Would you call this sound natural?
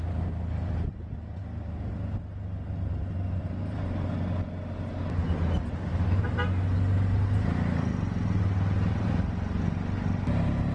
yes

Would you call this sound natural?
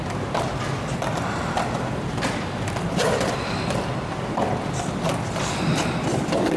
no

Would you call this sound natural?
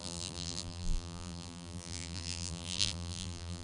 no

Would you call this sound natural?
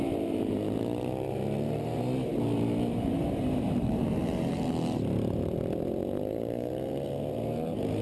no